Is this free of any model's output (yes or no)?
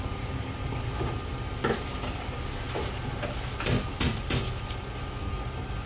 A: yes